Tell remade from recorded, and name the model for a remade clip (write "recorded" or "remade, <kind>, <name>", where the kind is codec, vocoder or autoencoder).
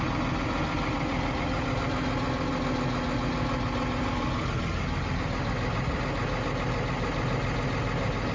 recorded